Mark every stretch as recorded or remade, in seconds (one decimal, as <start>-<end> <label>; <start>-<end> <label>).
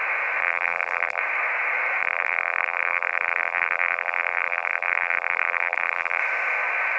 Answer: 0.0-0.4 recorded; 0.4-1.2 remade; 1.2-2.0 recorded; 2.0-6.2 remade; 6.2-7.0 recorded